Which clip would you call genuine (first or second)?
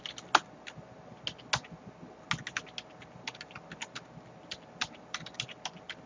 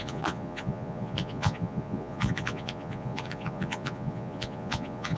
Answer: first